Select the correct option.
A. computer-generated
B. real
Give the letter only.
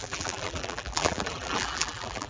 A